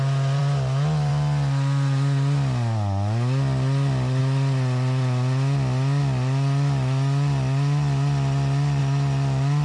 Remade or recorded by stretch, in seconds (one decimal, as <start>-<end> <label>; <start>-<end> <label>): 0.0-9.6 recorded